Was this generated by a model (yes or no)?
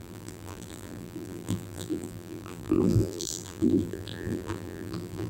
yes